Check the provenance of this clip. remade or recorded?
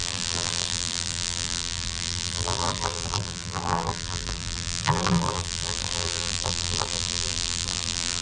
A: remade